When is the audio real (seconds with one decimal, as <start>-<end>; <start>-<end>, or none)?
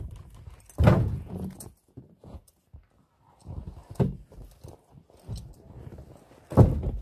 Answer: 0.0-0.9; 2.6-7.0